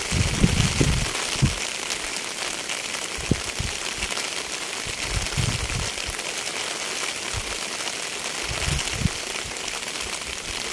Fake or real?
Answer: real